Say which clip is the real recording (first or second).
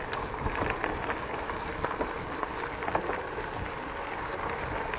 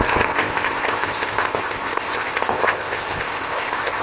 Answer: first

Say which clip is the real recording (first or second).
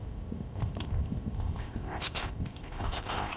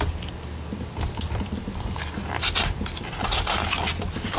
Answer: second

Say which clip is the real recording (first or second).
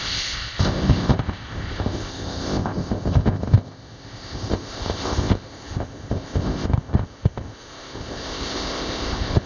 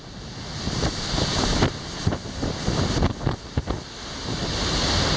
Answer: second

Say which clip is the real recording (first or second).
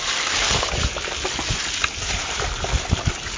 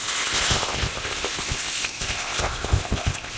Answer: first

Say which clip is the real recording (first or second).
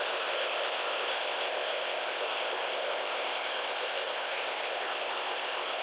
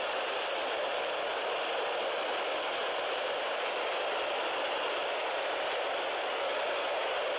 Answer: second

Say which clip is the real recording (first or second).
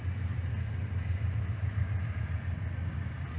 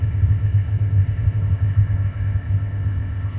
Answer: first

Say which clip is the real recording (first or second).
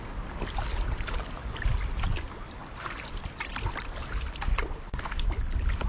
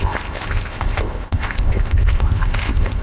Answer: first